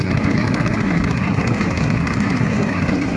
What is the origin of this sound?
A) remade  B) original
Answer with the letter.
A